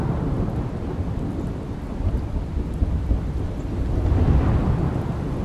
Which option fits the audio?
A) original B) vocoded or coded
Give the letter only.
A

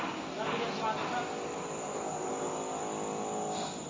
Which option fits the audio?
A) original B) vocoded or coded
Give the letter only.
A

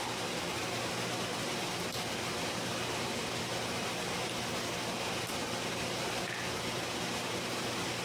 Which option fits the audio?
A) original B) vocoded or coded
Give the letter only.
A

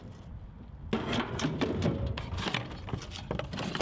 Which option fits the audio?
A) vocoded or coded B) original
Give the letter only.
B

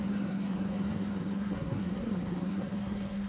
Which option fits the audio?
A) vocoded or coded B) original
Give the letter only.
A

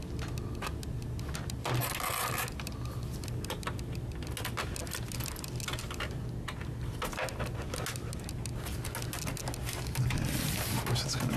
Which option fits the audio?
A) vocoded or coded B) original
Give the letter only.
B